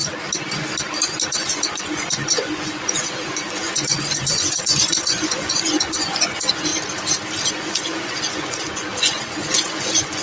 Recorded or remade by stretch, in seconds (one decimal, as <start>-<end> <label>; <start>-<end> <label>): 0.0-1.3 recorded; 1.3-6.7 remade; 6.7-7.5 recorded; 7.5-10.2 remade